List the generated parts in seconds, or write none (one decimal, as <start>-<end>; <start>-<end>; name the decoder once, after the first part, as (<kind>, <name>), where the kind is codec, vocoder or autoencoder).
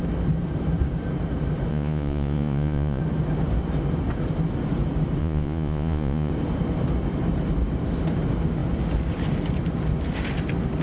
1.7-3.0 (vocoder, Vocos); 5.2-6.3